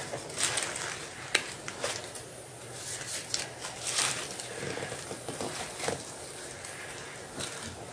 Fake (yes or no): no